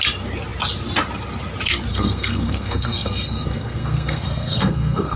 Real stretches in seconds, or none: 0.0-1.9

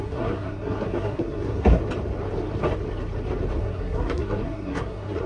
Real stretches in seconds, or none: 1.8-3.6

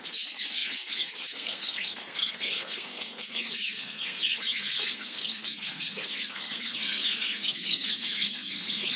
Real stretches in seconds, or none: none

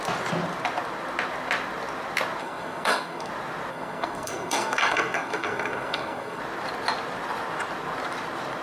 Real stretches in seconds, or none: 0.0-2.4; 3.3-3.7; 6.4-8.6

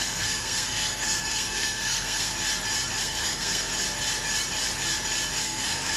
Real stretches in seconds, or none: 2.3-3.0; 3.7-5.4

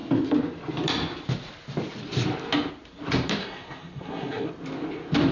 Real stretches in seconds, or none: 0.0-3.4; 4.5-5.3